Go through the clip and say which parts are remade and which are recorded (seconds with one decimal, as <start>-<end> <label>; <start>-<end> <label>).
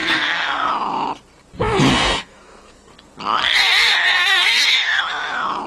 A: 0.0-0.7 remade; 0.7-1.9 recorded; 1.9-2.9 remade; 2.9-3.4 recorded; 3.4-5.0 remade; 5.0-5.7 recorded